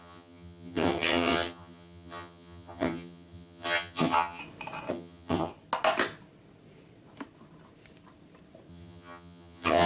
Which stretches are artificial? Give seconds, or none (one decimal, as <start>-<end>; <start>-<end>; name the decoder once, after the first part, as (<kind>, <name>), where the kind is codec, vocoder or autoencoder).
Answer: 0.0-4.4 (vocoder, HiFi-GAN); 4.9-5.5; 8.7-9.9